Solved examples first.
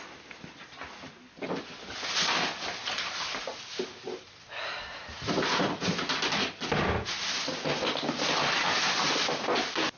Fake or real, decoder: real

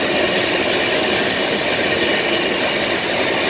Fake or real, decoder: real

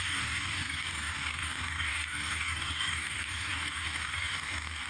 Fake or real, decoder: fake, codec, DAC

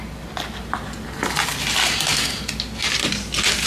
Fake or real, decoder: real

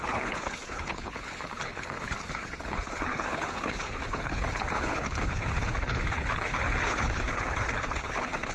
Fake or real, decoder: fake, codec, HILCodec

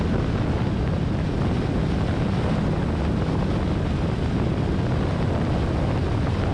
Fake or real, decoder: real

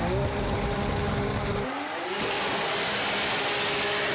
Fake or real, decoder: real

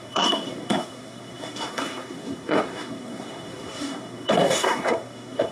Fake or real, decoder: fake, codec, SNAC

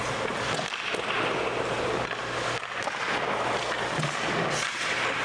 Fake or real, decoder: real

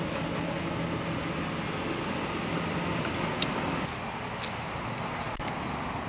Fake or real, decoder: real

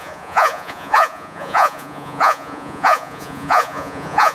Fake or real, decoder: fake, vocoder, Vocos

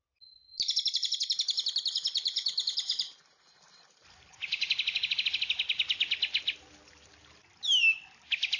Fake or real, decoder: real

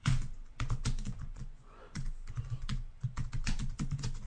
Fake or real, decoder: fake, vocoder, Vocos